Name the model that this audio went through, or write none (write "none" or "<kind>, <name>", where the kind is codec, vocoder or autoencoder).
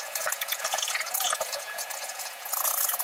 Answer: vocoder, Vocos